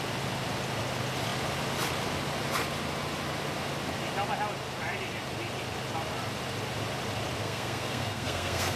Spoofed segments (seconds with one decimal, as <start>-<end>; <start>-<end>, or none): 7.4-8.8